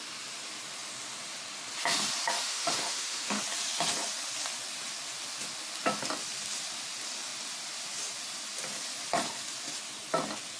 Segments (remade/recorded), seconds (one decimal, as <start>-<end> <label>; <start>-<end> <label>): 0.0-2.5 recorded; 2.5-3.4 remade; 3.4-10.6 recorded